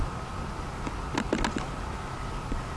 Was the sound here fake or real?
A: real